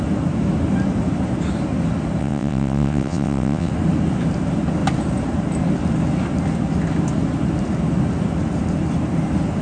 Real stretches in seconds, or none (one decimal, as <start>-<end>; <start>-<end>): 0.0-2.2; 3.7-9.6